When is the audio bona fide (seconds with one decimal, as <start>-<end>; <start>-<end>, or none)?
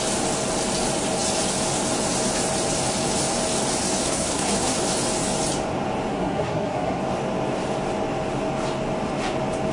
0.0-4.0; 4.8-6.1; 7.0-9.7